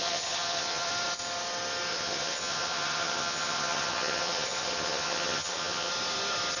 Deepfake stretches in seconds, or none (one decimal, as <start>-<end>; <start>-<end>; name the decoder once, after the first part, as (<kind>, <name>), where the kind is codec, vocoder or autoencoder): 0.0-0.9 (vocoder, HiFi-GAN); 1.9-5.9